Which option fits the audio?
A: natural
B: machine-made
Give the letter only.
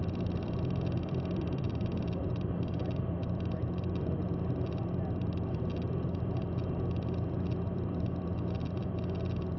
B